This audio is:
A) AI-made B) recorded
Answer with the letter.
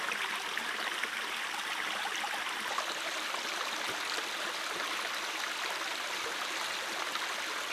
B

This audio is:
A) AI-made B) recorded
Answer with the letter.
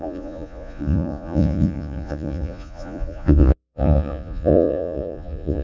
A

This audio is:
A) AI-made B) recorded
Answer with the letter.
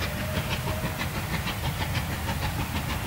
B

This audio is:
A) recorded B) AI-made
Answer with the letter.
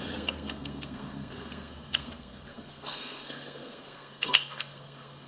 B